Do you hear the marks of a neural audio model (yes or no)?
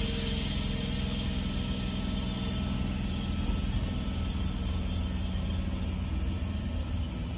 no